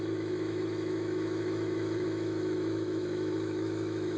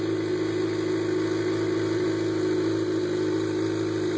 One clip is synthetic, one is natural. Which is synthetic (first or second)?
first